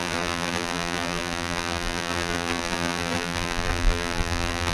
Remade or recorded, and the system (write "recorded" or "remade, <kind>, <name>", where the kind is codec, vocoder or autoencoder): remade, vocoder, BigVGAN v2